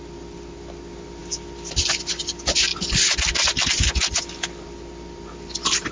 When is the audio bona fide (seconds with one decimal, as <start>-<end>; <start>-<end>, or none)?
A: 0.0-5.9